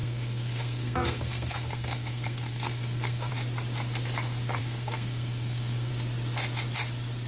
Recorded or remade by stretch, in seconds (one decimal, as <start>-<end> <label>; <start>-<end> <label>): 0.0-3.3 remade; 3.3-4.6 recorded; 4.6-5.9 remade; 5.9-7.3 recorded